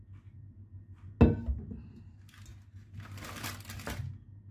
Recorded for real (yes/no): yes